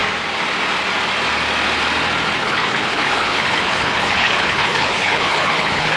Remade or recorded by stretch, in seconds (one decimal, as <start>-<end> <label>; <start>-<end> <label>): 0.0-2.4 recorded; 2.4-6.0 remade